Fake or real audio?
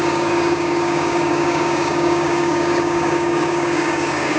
fake